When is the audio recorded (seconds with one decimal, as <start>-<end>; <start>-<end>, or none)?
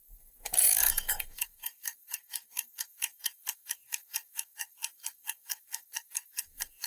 none